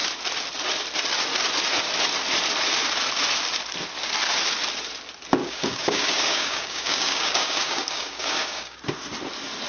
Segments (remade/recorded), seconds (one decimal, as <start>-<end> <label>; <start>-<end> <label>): 0.0-5.4 recorded; 5.4-8.8 remade; 8.8-9.7 recorded